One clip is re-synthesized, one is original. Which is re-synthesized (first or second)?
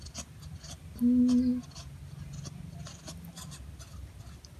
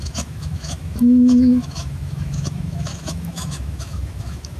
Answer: second